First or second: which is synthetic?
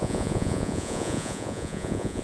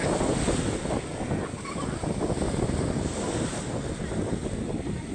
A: first